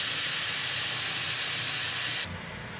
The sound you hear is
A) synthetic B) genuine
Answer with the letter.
B